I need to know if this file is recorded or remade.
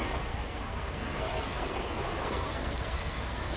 remade